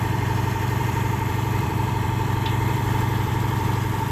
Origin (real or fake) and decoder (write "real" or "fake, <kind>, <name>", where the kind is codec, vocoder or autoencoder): fake, vocoder, BigVGAN v2